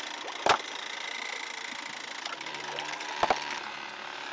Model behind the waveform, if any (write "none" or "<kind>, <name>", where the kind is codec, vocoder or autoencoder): none